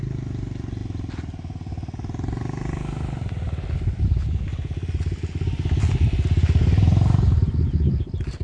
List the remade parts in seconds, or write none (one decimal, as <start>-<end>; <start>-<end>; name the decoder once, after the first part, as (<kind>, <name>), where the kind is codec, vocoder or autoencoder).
none